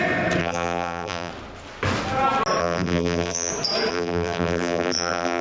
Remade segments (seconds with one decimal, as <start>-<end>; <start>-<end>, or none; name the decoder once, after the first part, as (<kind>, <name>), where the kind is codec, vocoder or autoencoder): 0.4-1.3 (vocoder, BigVGAN v2); 2.6-3.5; 3.9-5.4

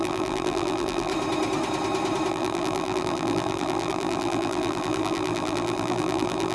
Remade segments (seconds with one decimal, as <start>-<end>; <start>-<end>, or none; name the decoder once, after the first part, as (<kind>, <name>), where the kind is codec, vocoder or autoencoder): 0.0-1.1 (vocoder, BigVGAN v2); 2.3-6.5

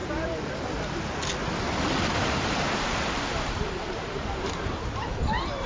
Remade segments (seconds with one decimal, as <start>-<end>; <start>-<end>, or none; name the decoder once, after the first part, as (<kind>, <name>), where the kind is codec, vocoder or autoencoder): 2.1-5.7 (vocoder, BigVGAN v2)